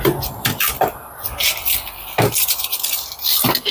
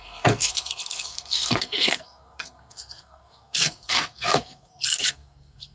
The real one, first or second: first